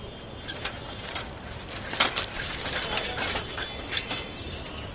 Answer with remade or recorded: recorded